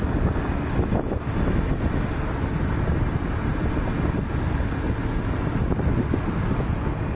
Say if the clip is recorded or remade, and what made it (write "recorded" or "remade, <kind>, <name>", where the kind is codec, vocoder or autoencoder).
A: recorded